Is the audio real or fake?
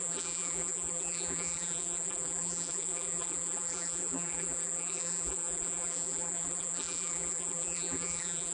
fake